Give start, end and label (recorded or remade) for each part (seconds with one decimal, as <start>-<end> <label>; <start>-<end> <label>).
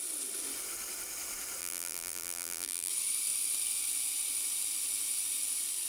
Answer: 0.0-1.6 recorded; 1.6-2.9 remade; 2.9-5.9 recorded